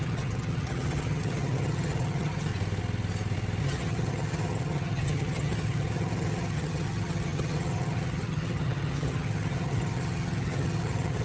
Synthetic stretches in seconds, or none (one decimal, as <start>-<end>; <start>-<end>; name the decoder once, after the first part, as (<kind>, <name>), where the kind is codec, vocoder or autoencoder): 0.0-2.5 (vocoder, HiFi-GAN); 3.6-11.2